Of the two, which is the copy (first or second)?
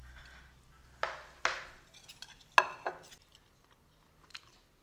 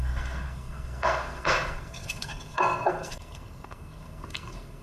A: second